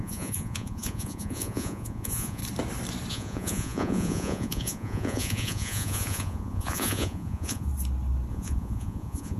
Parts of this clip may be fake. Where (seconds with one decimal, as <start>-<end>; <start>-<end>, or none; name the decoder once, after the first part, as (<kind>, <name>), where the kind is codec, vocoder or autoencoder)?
0.0-2.4 (vocoder, Vocos); 3.1-7.7; 8.3-9.4